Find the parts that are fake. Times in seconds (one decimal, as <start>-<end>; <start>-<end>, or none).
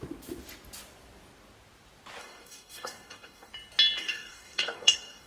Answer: 2.2-3.5; 4.0-5.3